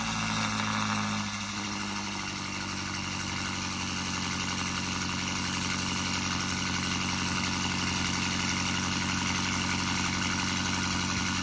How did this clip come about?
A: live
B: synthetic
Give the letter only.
A